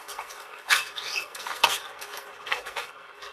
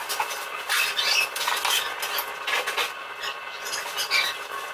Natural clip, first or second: second